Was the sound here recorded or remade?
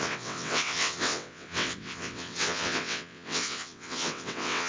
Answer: remade